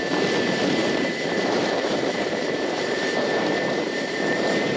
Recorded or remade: remade